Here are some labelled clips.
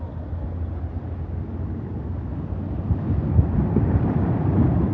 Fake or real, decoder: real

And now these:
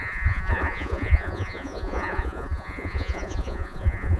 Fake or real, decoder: fake, vocoder, Vocos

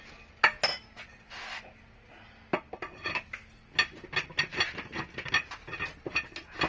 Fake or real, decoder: real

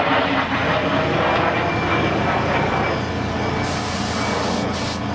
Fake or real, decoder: real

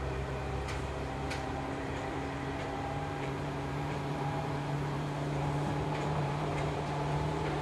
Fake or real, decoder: fake, vocoder, BigVGAN v2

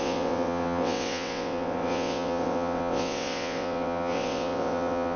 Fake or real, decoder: fake, vocoder, WaveNeXt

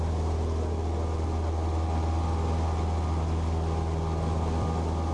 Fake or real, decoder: real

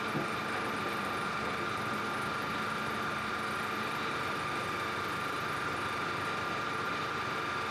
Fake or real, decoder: real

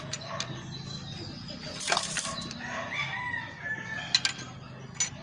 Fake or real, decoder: real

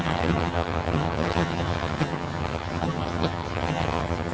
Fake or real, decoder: fake, vocoder, HiFi-GAN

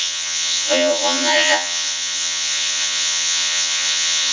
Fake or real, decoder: fake, vocoder, Vocos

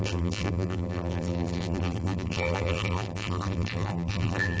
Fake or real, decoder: fake, vocoder, BigVGAN v2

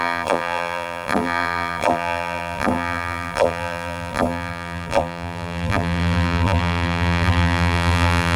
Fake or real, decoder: fake, vocoder, BigVGAN v2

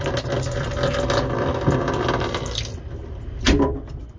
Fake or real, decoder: real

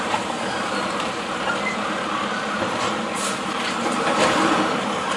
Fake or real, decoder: fake, vocoder, BigVGAN v2